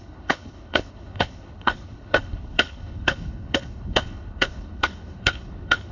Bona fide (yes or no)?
no